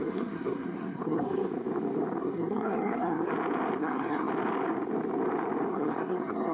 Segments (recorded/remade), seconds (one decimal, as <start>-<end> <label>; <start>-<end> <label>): 0.0-1.5 remade; 1.5-2.2 recorded; 2.2-3.3 remade; 3.3-3.8 recorded; 3.8-4.3 remade; 4.3-5.7 recorded; 5.7-6.5 remade